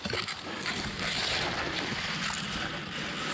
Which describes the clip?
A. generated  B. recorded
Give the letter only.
B